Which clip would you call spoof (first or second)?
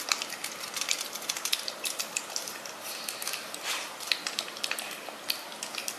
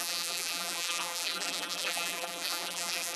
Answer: second